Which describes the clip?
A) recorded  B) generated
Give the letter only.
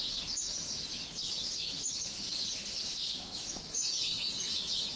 B